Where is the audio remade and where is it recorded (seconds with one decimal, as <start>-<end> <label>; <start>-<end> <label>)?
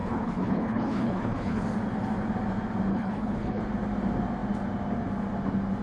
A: 0.0-1.6 remade; 1.6-2.9 recorded; 2.9-3.6 remade; 3.6-5.8 recorded